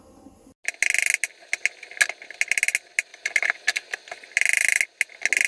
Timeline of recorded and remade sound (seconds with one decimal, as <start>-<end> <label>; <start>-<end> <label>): 0.0-5.5 recorded